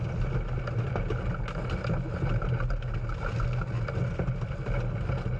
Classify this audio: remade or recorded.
recorded